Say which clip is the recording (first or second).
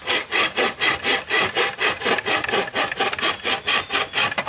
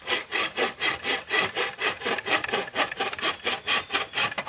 first